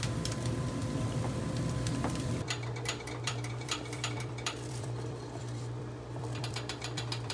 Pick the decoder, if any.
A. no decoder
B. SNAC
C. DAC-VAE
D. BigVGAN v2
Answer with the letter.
D